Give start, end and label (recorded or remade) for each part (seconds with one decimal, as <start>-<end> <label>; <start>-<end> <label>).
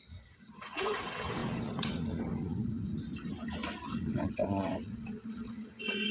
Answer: 0.0-2.9 remade; 2.9-3.9 recorded; 3.9-6.1 remade